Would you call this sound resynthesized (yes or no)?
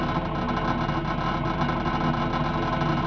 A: no